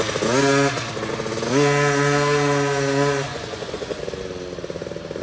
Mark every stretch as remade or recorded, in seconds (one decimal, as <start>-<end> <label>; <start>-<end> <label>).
0.0-3.3 recorded; 3.3-4.0 remade; 4.0-5.2 recorded